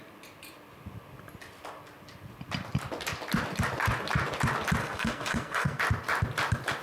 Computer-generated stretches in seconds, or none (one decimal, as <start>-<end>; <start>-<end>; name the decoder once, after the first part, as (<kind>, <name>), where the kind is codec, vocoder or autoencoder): 4.8-5.8 (codec, SNAC)

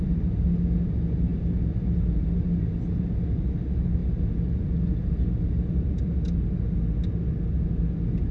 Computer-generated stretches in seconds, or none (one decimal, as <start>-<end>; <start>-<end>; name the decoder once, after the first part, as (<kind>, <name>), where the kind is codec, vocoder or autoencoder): none

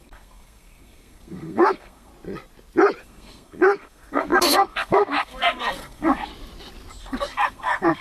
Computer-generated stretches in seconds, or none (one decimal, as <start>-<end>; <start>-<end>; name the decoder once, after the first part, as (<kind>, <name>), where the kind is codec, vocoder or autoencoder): 0.0-2.1 (codec, SNAC); 3.0-6.3; 7.0-8.0

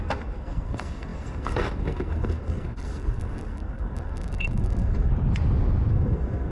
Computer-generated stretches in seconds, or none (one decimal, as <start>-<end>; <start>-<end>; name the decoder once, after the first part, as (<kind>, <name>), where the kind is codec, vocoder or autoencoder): 0.0-5.1 (codec, SNAC); 5.9-6.5